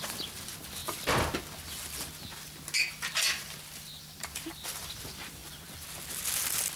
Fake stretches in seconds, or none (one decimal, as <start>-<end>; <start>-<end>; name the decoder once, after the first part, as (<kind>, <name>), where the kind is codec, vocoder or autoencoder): 0.0-0.8 (vocoder, BigVGAN v2); 3.1-5.4